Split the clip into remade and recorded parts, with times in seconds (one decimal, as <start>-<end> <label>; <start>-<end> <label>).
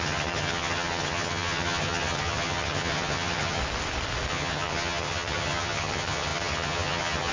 0.0-3.6 remade; 3.6-4.3 recorded; 4.3-7.3 remade